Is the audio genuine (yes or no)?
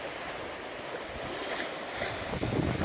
yes